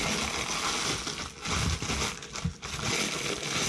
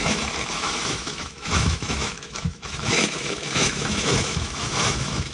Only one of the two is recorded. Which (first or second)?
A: first